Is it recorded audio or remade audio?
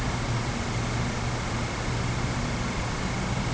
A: recorded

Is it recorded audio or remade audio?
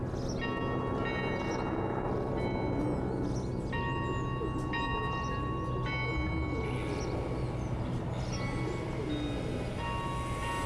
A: recorded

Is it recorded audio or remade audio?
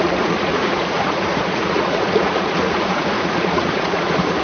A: remade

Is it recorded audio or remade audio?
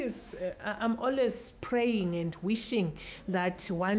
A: remade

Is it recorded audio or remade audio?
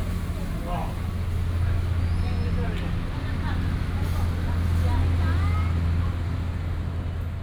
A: recorded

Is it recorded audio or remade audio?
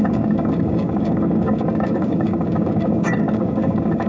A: remade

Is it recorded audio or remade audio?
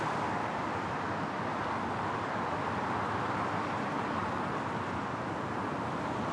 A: recorded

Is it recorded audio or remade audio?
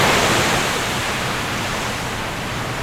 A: remade